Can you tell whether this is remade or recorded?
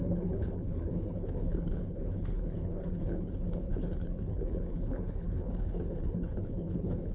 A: remade